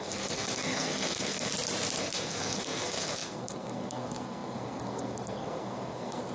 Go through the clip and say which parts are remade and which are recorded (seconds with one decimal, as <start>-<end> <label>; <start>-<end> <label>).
0.0-1.5 remade; 1.5-2.0 recorded; 2.0-6.3 remade